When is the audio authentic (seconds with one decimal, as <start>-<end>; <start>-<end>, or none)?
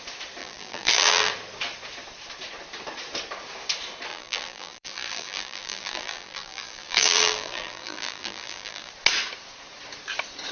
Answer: 0.0-0.4; 1.3-4.1; 8.9-10.5